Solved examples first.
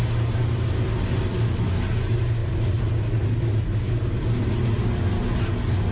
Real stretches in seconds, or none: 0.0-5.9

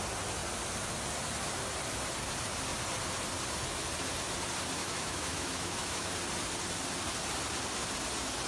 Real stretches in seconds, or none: 0.0-4.8; 6.1-8.5

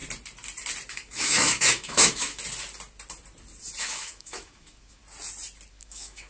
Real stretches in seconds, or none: 0.0-0.9; 2.4-3.8; 5.0-5.7

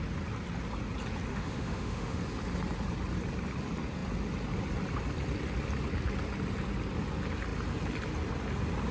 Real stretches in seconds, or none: 0.0-1.3; 2.2-8.9

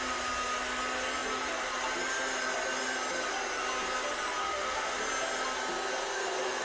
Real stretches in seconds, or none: 0.0-4.4; 5.0-6.6

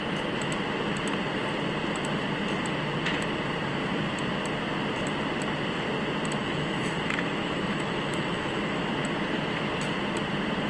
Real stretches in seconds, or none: 0.0-6.4; 8.9-10.7

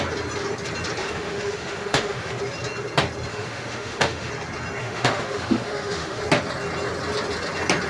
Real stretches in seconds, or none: 0.0-1.0; 2.4-3.3; 4.3-4.8; 6.2-7.9

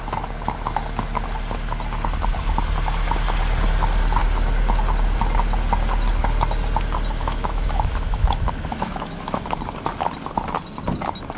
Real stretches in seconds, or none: 0.0-7.2; 9.4-11.4